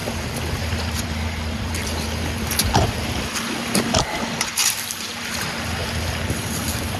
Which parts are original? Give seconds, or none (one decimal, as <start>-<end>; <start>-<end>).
3.8-4.6; 5.3-5.8